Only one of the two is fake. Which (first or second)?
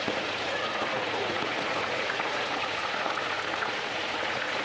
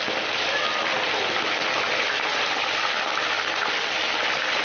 first